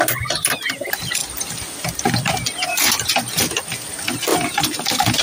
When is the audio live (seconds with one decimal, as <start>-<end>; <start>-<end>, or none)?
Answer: 0.0-5.2